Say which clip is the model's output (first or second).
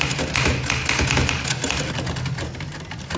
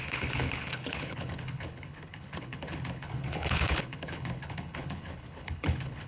second